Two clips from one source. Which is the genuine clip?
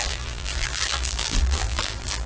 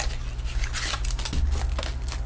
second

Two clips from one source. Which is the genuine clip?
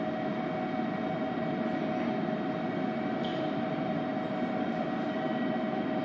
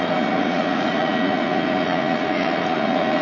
first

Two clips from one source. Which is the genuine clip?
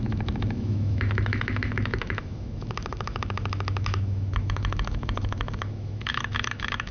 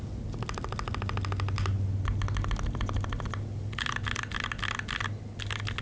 second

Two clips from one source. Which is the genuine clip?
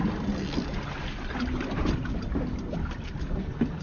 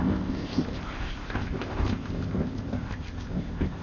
first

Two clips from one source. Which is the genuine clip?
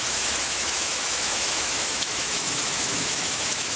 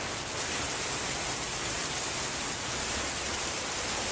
second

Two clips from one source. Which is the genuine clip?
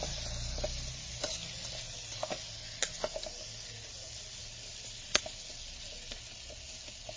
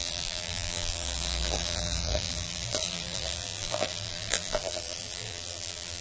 first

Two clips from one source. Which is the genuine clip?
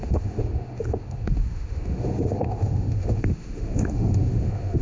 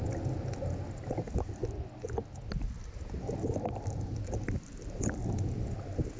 second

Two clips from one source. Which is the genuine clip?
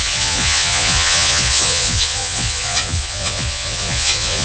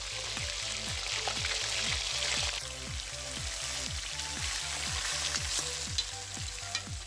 second